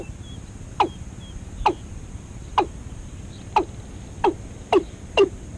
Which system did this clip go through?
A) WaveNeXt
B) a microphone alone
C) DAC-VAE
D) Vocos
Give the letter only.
B